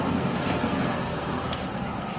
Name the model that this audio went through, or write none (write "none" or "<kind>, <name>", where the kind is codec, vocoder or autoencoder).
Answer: codec, SNAC